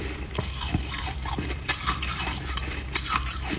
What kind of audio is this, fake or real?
fake